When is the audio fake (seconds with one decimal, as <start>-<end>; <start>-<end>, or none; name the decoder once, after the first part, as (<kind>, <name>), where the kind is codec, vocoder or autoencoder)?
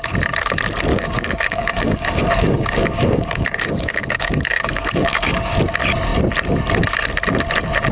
0.9-5.6 (codec, DAC)